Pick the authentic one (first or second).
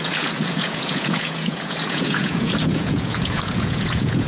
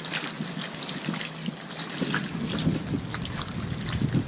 second